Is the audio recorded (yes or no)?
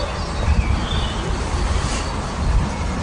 yes